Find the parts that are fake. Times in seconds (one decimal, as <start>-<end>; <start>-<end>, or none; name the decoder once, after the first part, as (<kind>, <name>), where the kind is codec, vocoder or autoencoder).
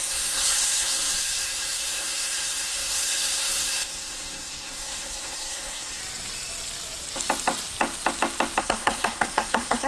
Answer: 0.0-6.0 (codec, SNAC); 8.6-9.9